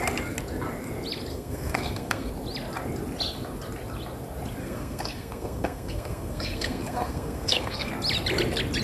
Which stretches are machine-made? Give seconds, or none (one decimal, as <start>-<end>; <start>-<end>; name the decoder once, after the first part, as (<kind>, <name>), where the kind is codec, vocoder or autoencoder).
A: 1.3-2.3 (codec, SNAC); 4.6-7.9